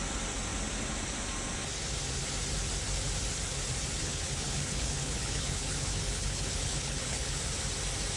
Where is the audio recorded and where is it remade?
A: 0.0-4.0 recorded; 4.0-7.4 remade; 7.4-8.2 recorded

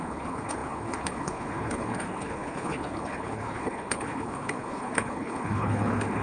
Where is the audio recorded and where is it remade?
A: 0.0-6.2 remade

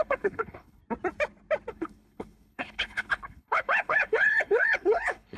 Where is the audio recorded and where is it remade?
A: 0.0-0.8 remade; 0.8-1.7 recorded; 1.7-5.4 remade

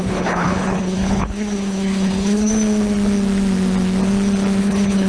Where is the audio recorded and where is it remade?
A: 0.0-2.5 remade; 2.5-4.6 recorded; 4.6-5.1 remade

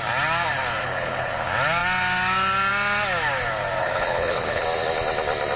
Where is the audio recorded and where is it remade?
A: 0.0-0.8 recorded; 0.8-1.3 remade; 1.3-3.8 recorded; 3.8-4.6 remade; 4.6-5.6 recorded

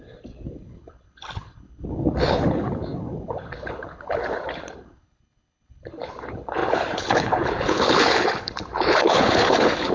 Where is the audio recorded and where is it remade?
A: 0.0-9.9 remade